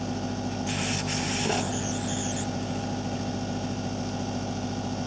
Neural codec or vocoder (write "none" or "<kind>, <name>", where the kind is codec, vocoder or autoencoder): none